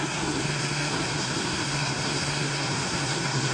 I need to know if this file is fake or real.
fake